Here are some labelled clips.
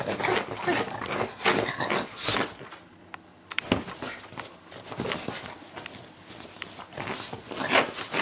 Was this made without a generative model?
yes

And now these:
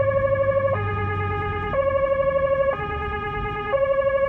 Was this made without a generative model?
yes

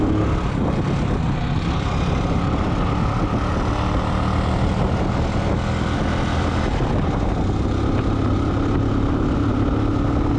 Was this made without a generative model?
yes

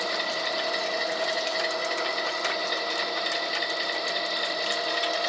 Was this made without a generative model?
yes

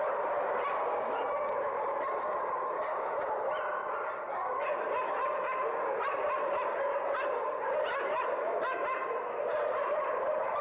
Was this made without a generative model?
yes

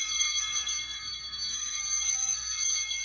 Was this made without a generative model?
no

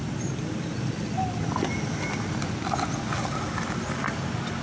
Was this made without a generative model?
yes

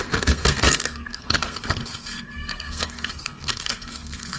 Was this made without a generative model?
no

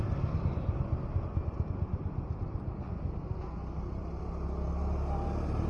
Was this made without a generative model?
yes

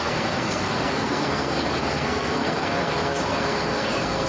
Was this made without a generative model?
no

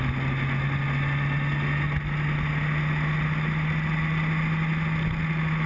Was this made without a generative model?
yes